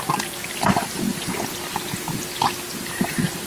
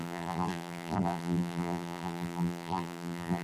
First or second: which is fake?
second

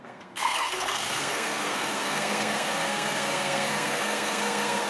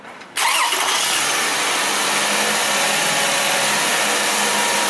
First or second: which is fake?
first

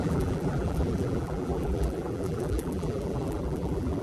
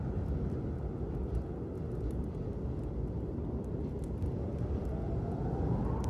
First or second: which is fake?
first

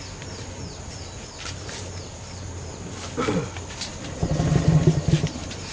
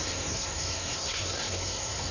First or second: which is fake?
second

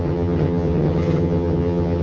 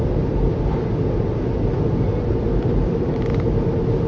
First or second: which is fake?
first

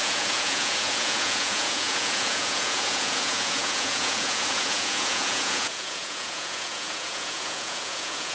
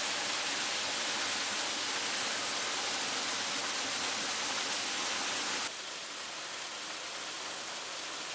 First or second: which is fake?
first